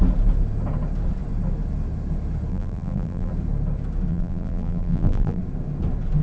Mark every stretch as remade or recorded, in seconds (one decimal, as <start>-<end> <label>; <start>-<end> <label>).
0.0-2.5 recorded; 2.5-3.3 remade; 3.3-4.1 recorded; 4.1-5.4 remade; 5.4-6.2 recorded